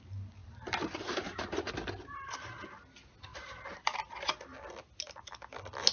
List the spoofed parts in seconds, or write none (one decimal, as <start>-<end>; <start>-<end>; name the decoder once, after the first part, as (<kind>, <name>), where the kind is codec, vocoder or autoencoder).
0.4-1.7 (vocoder, BigVGAN v2); 3.3-4.3